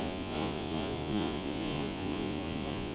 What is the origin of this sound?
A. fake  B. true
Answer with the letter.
A